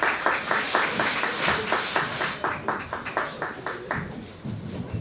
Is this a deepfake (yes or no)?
no